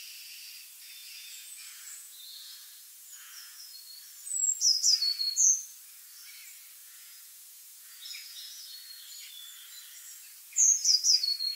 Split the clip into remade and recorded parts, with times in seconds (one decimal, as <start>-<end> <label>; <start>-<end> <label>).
0.0-1.0 recorded; 1.0-3.8 remade; 3.8-5.1 recorded; 5.1-5.8 remade; 5.8-6.8 recorded; 6.8-8.6 remade; 8.6-11.6 recorded

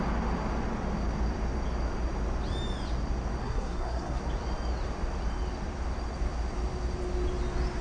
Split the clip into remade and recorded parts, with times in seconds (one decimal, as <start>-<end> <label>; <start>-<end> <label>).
0.0-3.4 recorded; 3.4-4.2 remade; 4.2-7.8 recorded

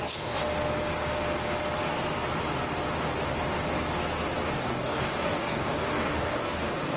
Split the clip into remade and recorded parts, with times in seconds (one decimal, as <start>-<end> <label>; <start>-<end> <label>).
0.0-0.4 remade; 0.4-4.6 recorded; 4.6-7.0 remade

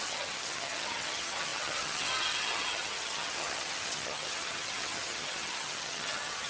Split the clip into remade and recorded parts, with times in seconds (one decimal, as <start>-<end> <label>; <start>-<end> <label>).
0.0-6.5 remade

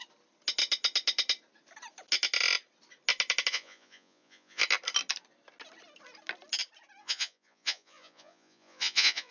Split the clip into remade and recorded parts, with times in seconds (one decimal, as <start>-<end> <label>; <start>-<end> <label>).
0.0-3.5 recorded; 3.5-4.6 remade; 4.6-7.0 recorded; 7.0-9.3 remade

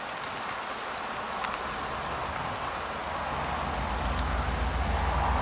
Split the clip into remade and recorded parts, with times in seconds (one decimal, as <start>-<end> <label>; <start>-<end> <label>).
0.0-5.4 recorded